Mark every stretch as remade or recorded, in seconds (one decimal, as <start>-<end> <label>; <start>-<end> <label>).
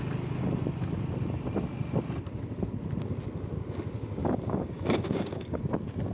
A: 0.0-4.2 recorded; 4.2-5.6 remade; 5.6-6.1 recorded